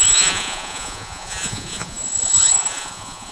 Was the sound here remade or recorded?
remade